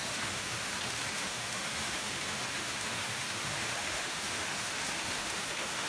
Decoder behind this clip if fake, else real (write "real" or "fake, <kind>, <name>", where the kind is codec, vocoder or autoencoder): fake, autoencoder, DAC-VAE